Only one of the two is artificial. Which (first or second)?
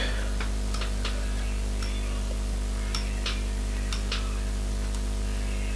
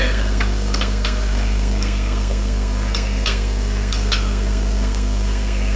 second